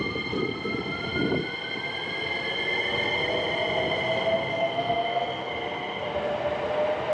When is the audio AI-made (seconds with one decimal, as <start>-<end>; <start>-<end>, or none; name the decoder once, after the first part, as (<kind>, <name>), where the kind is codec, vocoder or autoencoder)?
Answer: 4.5-5.5 (codec, SNAC)